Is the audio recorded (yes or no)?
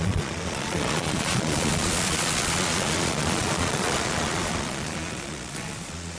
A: no